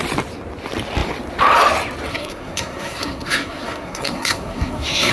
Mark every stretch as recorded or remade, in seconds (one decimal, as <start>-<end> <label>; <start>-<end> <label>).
0.0-2.1 recorded; 2.1-5.1 remade